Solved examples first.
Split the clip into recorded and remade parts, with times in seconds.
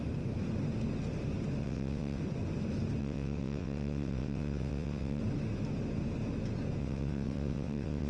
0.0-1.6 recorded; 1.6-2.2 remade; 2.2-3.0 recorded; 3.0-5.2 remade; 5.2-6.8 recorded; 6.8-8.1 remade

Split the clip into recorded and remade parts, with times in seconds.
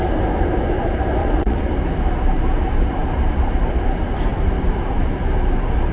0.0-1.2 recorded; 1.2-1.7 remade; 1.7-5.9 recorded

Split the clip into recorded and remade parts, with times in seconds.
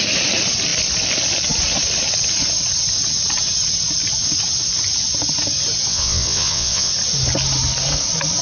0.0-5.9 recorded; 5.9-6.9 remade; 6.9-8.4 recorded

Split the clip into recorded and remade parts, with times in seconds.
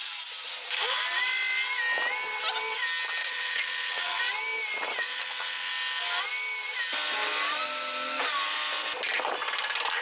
0.0-3.2 recorded; 3.2-4.2 remade; 4.2-4.7 recorded; 4.7-5.7 remade; 5.7-10.0 recorded